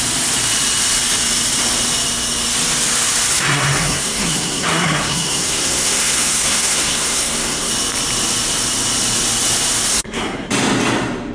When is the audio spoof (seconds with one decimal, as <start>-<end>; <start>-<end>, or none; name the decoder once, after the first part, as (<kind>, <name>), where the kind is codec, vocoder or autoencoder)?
3.3-7.7 (codec, SNAC); 9.9-10.5